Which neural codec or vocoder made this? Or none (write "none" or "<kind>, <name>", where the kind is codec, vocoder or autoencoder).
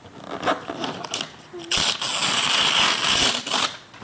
none